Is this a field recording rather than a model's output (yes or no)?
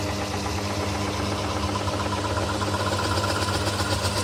yes